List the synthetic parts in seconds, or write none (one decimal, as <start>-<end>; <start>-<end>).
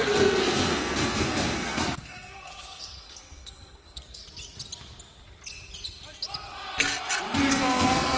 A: 0.0-4.2; 7.5-8.2